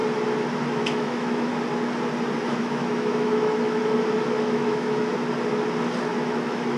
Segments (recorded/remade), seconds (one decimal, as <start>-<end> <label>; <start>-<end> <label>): 0.0-0.8 recorded; 0.8-1.5 remade; 1.5-2.6 recorded; 2.6-5.1 remade; 5.1-6.1 recorded; 6.1-6.8 remade